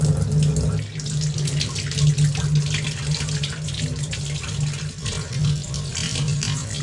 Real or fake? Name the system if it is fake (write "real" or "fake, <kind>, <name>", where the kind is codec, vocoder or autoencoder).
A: real